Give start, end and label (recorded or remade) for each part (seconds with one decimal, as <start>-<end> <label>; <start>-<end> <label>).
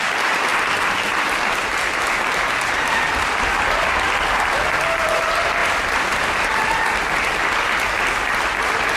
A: 0.0-9.0 recorded